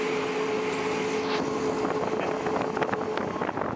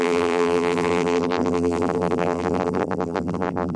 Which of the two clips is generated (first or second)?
second